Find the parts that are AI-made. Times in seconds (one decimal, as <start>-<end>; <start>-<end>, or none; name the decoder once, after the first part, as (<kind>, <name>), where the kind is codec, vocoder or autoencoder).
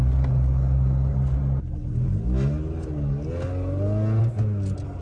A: none